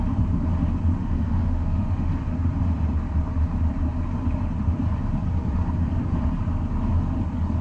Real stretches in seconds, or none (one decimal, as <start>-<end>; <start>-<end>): 0.0-0.9; 2.1-7.6